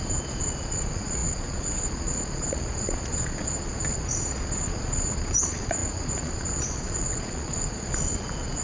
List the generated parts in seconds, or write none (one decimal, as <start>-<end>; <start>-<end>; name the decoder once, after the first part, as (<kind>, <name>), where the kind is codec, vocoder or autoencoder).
0.0-8.6 (vocoder, Vocos)